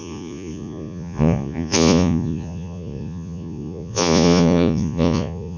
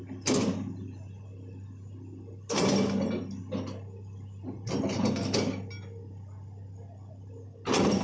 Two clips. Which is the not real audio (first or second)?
first